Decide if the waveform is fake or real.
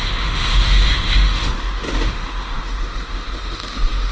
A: fake